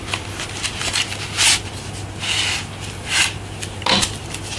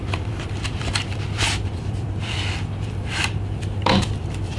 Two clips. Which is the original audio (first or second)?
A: first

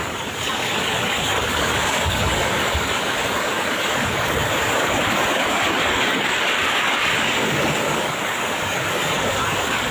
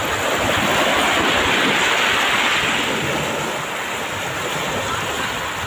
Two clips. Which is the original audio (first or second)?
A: second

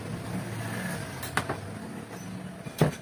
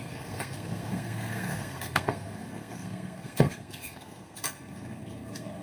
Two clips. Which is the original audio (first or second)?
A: first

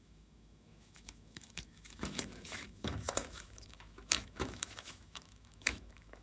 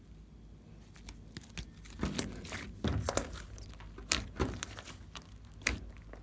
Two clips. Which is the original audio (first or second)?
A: second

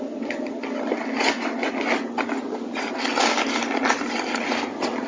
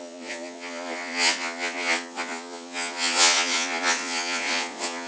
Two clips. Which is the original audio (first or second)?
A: first